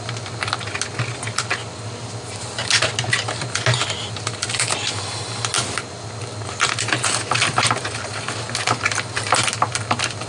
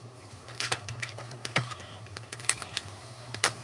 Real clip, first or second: first